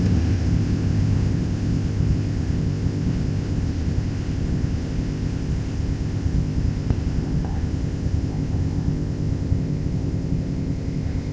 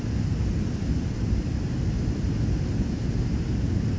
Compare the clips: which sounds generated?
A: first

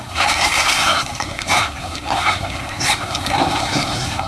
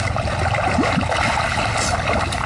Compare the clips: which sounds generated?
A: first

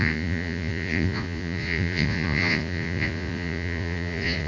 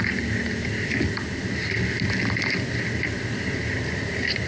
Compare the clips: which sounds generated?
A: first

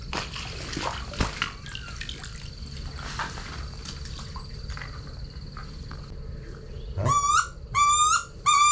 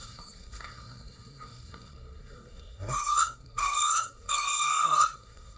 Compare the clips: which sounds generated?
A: second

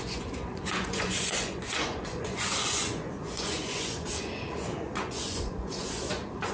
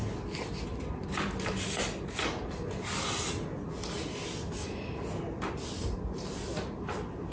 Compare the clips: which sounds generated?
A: first